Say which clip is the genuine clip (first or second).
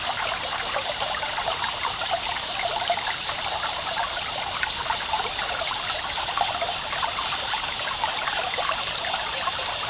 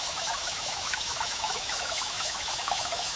first